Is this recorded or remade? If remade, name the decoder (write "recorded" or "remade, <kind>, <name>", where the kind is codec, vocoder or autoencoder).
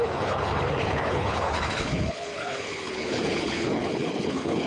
remade, codec, HILCodec